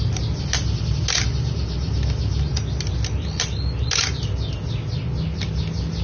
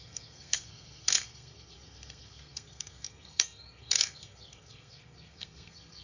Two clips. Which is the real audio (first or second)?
first